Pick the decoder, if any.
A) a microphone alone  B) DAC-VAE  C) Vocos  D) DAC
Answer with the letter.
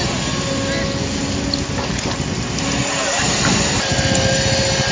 A